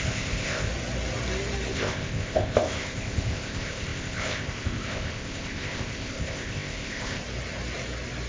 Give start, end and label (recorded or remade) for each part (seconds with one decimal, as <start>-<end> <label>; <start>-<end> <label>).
0.0-0.7 remade; 0.7-1.7 recorded; 1.7-7.2 remade; 7.2-8.3 recorded